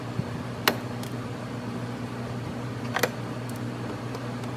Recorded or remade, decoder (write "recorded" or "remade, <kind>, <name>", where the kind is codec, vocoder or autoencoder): recorded